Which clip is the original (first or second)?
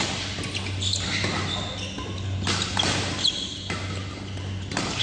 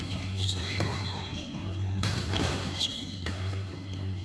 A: first